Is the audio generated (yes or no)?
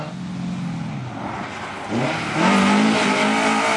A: no